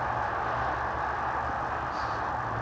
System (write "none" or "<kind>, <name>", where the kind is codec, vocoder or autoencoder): none